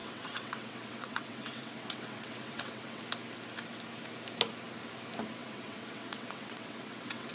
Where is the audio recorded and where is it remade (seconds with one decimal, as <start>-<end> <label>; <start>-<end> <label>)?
0.0-3.0 remade; 3.0-5.4 recorded; 5.4-7.3 remade